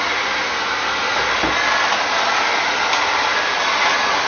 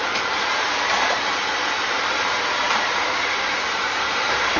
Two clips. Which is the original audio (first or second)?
first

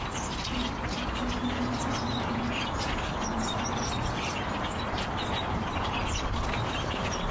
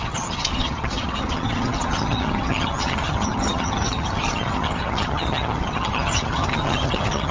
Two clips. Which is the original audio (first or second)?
first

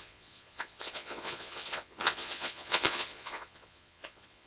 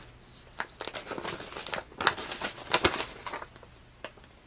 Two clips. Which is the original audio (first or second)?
second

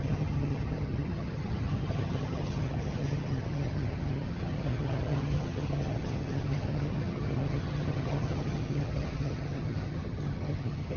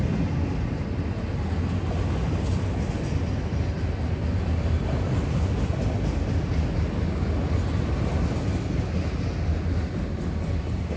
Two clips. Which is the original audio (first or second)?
second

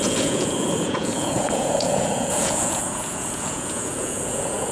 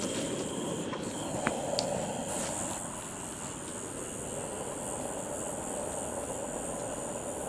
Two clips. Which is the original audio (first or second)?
second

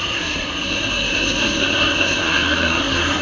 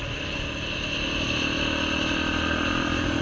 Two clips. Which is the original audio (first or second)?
second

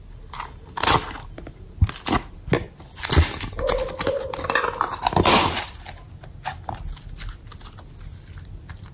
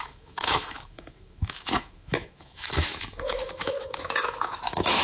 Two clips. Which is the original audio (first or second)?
first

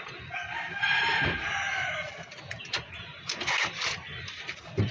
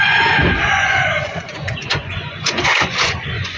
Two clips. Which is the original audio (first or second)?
first